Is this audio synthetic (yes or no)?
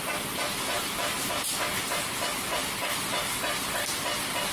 no